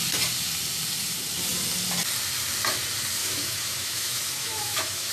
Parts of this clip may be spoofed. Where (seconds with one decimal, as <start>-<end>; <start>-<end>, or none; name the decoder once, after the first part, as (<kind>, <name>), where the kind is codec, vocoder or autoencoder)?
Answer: 3.2-5.1 (autoencoder, DAC-VAE)